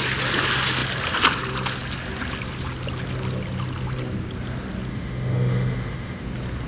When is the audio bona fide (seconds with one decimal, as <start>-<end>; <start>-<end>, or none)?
0.0-4.9; 6.2-6.7